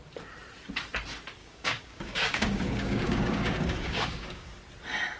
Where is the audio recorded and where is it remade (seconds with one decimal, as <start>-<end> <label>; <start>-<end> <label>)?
0.0-1.4 recorded; 1.4-4.5 remade; 4.5-5.2 recorded